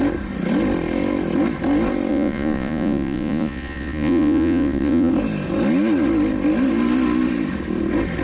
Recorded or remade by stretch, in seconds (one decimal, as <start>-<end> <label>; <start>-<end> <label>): 0.0-2.1 recorded; 2.1-5.1 remade; 5.1-8.2 recorded